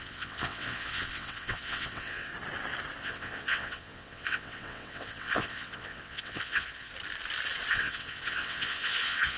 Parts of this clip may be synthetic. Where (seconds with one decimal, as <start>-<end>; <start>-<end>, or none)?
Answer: 0.0-2.3; 3.0-6.9; 7.7-9.4